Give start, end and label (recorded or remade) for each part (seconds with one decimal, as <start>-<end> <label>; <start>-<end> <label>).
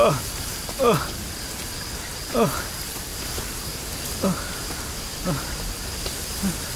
0.0-2.1 recorded; 2.1-2.7 remade; 2.7-3.1 recorded; 3.1-5.2 remade; 5.2-6.8 recorded